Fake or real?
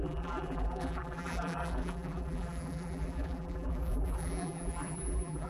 fake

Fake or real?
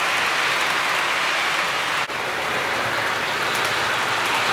real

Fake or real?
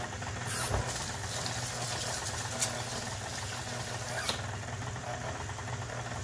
real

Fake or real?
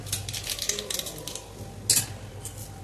real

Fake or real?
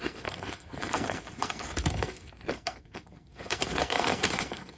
fake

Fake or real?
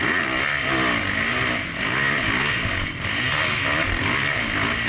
real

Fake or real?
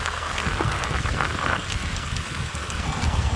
fake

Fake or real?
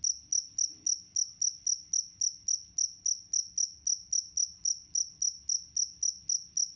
real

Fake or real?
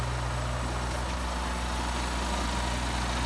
real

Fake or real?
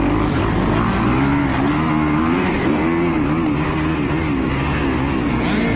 real